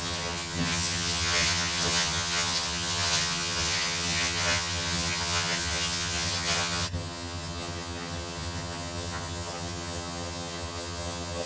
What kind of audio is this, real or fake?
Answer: fake